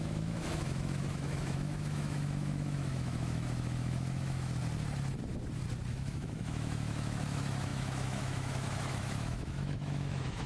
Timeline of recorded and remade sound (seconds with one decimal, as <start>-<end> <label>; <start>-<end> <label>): 0.0-4.6 remade; 4.6-5.9 recorded; 5.9-10.5 remade